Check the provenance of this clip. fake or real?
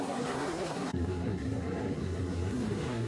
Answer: fake